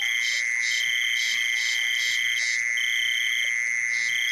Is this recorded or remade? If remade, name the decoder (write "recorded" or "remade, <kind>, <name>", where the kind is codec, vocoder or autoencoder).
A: recorded